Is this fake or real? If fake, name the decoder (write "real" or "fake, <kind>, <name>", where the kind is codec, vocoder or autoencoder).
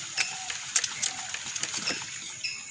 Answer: real